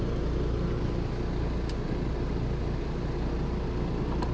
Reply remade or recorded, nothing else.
recorded